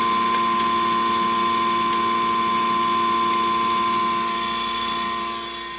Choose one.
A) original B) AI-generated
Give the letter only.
A